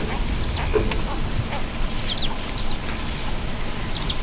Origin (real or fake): real